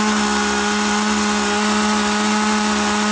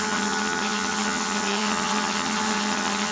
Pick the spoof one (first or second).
second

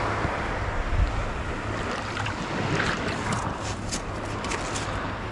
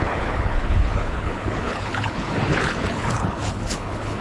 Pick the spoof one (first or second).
second